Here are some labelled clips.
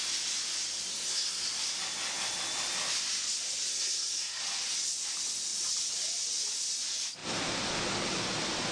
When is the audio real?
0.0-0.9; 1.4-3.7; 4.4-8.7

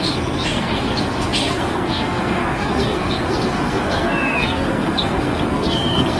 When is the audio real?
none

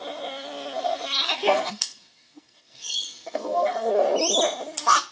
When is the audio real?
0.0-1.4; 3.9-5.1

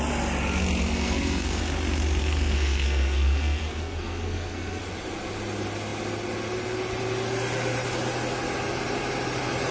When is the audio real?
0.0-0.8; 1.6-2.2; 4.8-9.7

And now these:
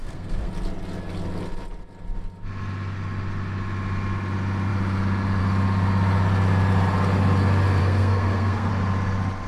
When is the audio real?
0.5-7.8; 8.7-9.5

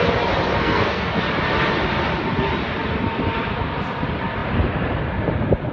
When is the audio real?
0.0-0.6; 1.2-5.7

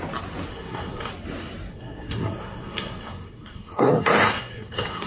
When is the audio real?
0.0-0.5; 1.1-1.7

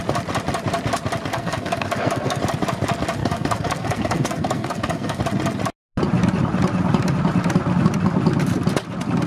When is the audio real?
0.0-1.3; 2.4-3.2; 5.2-9.3